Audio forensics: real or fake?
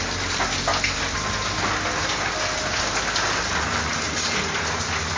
real